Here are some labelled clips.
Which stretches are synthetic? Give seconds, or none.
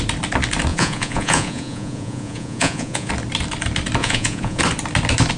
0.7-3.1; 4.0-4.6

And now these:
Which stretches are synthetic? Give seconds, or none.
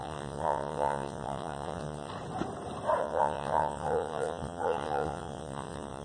0.0-2.1; 3.0-6.0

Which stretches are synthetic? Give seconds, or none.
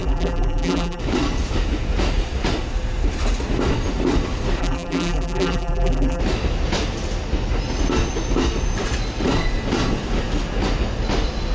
0.0-1.0; 4.6-6.2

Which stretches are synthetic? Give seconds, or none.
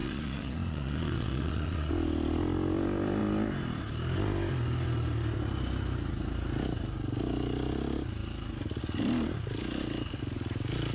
0.0-1.9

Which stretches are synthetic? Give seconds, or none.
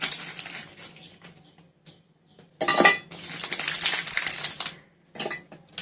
none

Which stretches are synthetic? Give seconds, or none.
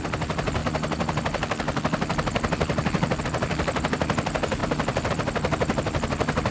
none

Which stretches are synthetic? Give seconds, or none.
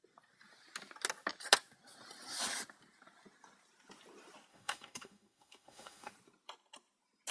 4.5-6.1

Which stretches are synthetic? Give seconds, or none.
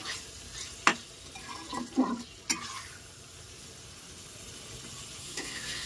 5.2-5.9